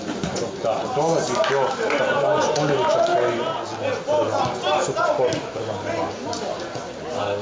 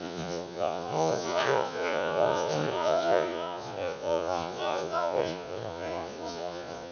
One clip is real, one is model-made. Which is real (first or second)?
first